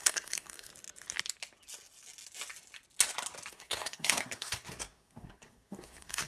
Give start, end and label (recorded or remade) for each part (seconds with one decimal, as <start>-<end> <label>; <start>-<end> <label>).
0.0-0.7 remade; 0.7-3.5 recorded; 3.5-6.3 remade